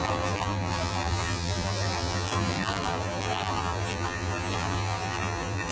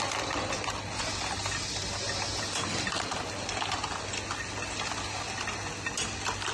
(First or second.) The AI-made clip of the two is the first